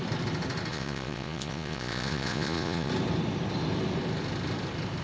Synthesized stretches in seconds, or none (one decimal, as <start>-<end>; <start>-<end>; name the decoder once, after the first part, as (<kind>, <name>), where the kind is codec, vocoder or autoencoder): 0.7-2.9 (vocoder, Vocos)